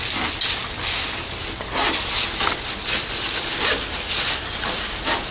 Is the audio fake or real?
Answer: real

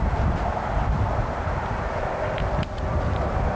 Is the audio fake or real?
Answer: real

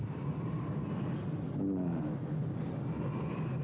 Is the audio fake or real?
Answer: real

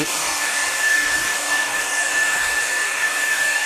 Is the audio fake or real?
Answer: fake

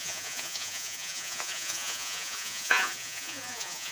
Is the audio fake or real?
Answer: fake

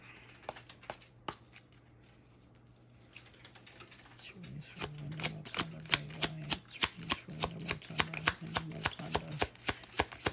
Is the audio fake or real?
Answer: real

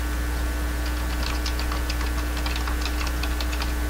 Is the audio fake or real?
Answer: real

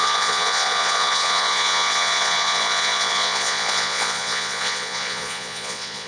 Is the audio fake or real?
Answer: fake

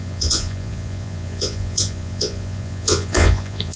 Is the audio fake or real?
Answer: fake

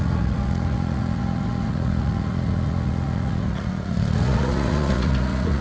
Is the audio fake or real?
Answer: fake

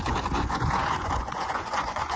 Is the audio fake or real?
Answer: fake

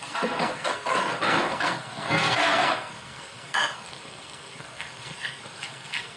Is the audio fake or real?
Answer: fake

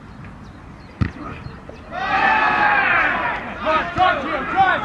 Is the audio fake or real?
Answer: real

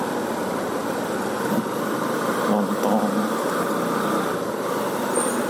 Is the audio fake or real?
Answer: real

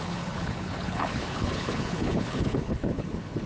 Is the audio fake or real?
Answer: fake